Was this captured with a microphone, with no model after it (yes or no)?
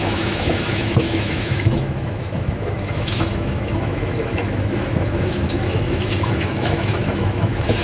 no